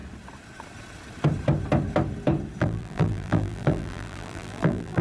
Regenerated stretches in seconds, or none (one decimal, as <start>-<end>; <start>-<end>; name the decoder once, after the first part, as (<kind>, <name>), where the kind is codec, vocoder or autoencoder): 2.6-5.0 (vocoder, BigVGAN v2)